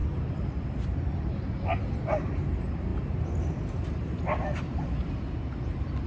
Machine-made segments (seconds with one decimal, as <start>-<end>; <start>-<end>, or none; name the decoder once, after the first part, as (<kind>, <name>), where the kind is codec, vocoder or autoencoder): 2.9-5.1 (vocoder, BigVGAN v2)